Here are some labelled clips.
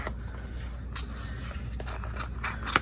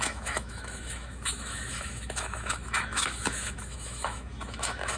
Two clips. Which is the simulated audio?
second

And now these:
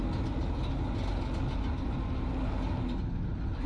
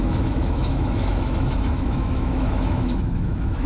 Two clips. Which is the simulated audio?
second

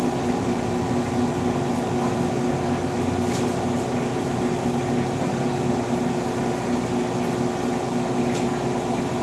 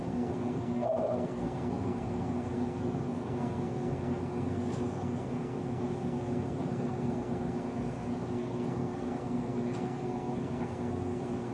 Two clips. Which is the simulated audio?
second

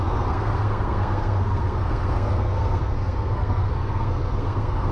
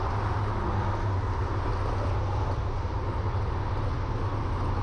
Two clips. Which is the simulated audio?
first